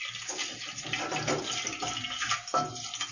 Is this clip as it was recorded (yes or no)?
yes